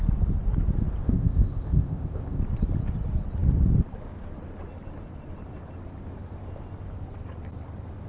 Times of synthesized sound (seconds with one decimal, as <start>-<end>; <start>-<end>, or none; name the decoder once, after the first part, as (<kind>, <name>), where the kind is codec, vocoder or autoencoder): 1.0-2.4 (codec, ZipCodec)